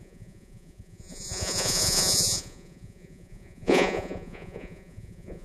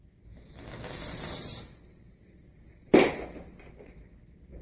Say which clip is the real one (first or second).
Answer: second